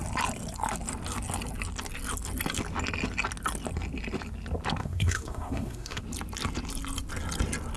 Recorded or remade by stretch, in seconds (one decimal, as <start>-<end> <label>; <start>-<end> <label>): 0.0-4.8 recorded; 4.8-6.0 remade; 6.0-7.8 recorded